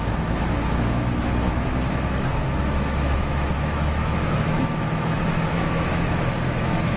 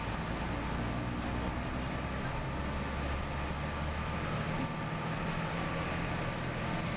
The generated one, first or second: first